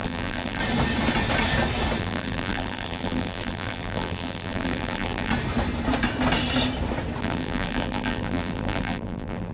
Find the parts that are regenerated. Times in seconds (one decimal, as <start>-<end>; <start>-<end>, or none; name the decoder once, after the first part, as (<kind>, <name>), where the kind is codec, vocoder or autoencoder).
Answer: 0.0-0.6 (vocoder, BigVGAN v2); 2.0-5.3; 7.2-9.5